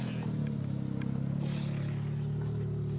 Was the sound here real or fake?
real